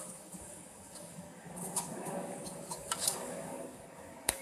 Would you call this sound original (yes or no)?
no